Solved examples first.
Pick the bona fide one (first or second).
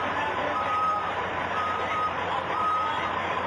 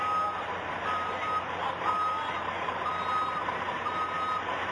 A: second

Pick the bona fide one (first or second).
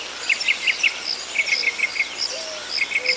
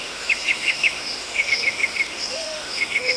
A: first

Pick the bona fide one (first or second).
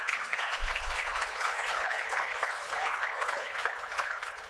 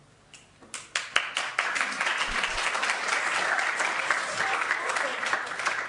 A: second